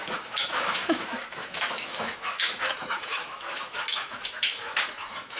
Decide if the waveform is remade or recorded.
remade